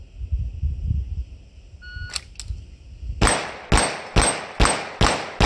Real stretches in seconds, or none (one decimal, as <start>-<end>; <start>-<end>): 0.0-5.5